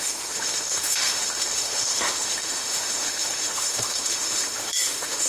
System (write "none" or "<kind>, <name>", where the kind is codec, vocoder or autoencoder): autoencoder, DAC-VAE